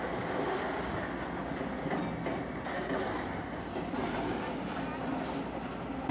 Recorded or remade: recorded